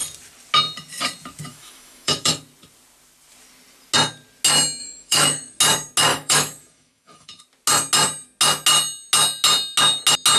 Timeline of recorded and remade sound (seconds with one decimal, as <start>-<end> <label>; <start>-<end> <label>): 0.0-1.5 recorded; 1.5-2.3 remade; 2.3-4.8 recorded; 4.8-5.6 remade; 5.6-6.1 recorded; 6.1-7.4 remade; 7.4-10.4 recorded